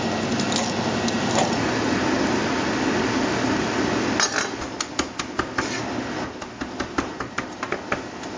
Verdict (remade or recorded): recorded